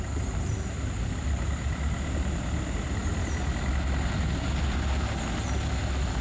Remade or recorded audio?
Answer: recorded